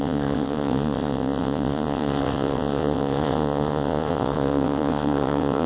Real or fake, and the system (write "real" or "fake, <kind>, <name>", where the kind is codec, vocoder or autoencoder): fake, vocoder, WaveNeXt